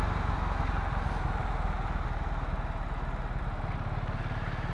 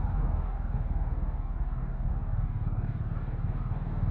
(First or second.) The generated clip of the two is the second